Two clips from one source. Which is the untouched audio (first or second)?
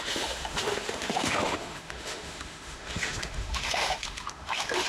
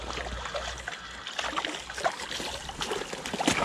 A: second